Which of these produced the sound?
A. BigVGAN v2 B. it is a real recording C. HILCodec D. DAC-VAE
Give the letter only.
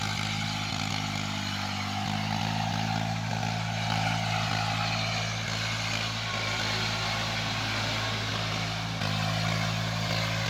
B